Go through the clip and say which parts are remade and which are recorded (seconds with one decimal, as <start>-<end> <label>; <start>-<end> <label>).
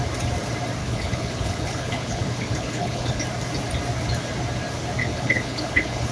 0.0-0.8 recorded; 0.8-3.2 remade; 3.2-5.0 recorded; 5.0-6.1 remade